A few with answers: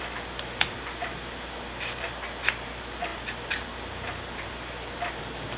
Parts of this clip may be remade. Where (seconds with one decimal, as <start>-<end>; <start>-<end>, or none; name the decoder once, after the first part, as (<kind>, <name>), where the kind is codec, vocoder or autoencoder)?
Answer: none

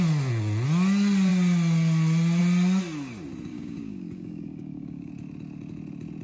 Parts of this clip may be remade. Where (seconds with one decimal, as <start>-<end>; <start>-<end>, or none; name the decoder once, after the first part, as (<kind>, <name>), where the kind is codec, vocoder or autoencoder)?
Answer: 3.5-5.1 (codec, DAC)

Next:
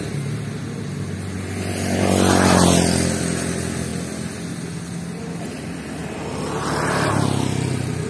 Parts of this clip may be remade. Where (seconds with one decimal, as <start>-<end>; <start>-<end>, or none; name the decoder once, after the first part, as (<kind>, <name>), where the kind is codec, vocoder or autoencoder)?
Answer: none

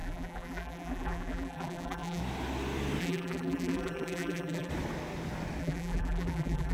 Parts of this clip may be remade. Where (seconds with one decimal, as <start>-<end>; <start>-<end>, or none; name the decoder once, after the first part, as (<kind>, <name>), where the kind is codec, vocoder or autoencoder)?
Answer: 0.0-2.2 (vocoder, BigVGAN v2); 3.0-4.7; 5.6-6.7

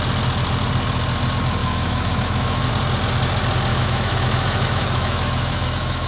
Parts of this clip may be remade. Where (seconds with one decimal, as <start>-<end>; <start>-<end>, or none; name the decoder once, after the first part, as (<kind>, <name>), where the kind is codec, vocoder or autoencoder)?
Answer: 1.6-2.7 (autoencoder, DAC-VAE); 3.7-6.1

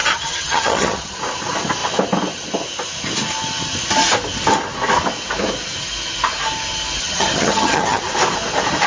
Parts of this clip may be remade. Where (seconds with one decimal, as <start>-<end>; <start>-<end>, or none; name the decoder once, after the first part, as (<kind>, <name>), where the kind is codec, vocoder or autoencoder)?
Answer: 0.0-1.2 (vocoder, HiFi-GAN); 7.0-8.0

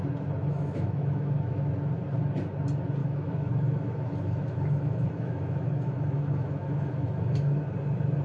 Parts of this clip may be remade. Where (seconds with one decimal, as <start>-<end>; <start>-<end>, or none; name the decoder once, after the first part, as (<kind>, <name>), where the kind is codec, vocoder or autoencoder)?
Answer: 0.5-1.7 (autoencoder, DAC-VAE); 3.0-7.6

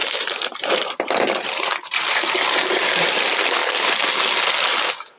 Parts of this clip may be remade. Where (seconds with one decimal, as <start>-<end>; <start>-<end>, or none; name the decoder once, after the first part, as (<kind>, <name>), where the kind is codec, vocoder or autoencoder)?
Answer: 0.0-3.1 (vocoder, BigVGAN v2)